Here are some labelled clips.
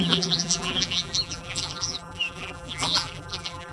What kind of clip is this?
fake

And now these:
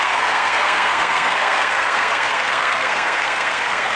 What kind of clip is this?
fake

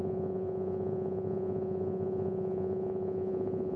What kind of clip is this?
fake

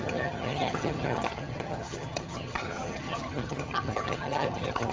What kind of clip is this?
fake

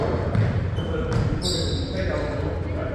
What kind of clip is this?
real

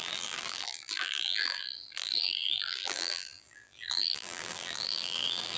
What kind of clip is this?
fake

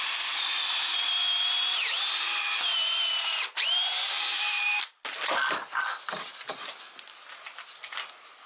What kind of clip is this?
real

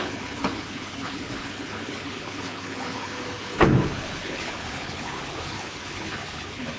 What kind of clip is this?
fake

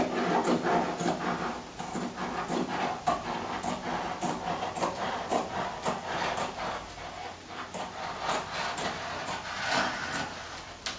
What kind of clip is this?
real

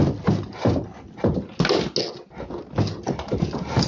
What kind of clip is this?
real